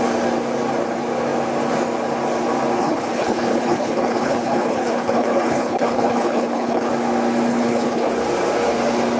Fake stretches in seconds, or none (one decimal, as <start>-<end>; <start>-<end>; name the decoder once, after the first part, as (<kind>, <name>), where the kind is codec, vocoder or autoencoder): 2.8-6.9 (codec, HILCodec); 7.5-8.1

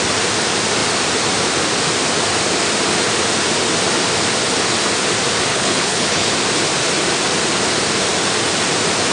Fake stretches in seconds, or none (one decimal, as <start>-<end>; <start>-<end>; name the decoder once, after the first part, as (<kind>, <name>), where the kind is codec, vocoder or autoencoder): 5.5-6.3 (codec, HILCodec)

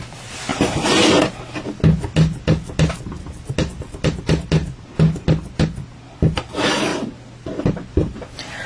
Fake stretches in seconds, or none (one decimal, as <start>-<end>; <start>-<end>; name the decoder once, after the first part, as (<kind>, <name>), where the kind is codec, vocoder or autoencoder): none